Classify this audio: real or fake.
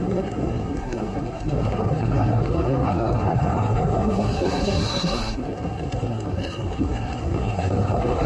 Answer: fake